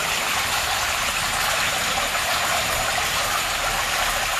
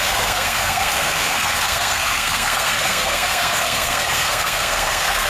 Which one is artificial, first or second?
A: second